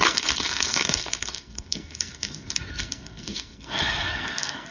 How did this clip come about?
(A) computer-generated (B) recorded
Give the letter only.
A